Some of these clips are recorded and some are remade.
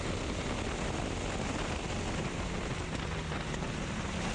recorded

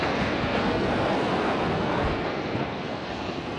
remade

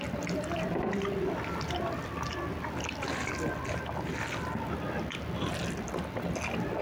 recorded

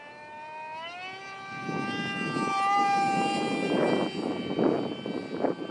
recorded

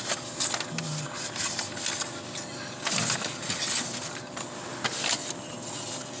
recorded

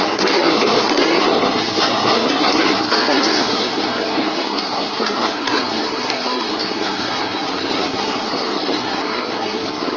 remade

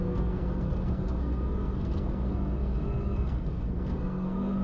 remade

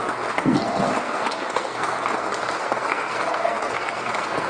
remade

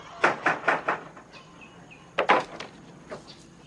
recorded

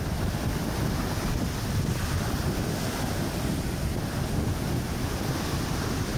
recorded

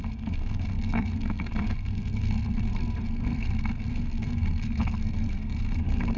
remade